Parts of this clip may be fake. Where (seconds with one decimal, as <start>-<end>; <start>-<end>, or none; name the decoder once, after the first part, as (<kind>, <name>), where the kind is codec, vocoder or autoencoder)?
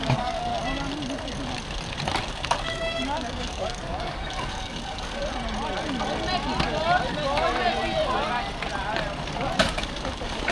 0.0-0.5 (codec, DAC); 2.3-5.2; 9.6-10.5